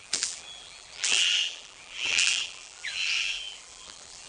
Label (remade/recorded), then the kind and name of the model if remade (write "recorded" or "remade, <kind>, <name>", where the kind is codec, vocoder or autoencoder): remade, vocoder, BigVGAN v2